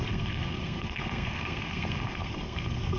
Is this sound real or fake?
fake